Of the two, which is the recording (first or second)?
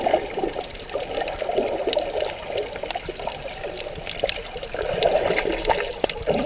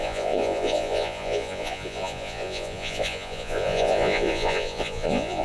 first